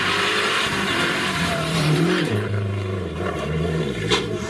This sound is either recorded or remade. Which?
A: remade